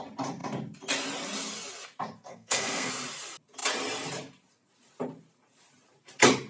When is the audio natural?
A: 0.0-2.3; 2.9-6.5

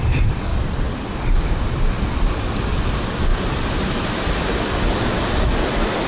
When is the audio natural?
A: 0.5-2.7; 3.3-6.1

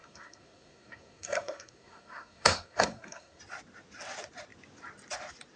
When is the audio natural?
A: 3.4-5.6

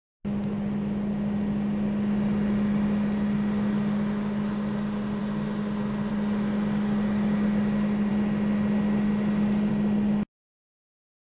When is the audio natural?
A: 0.0-11.3